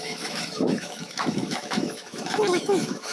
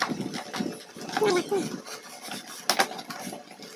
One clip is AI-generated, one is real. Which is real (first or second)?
second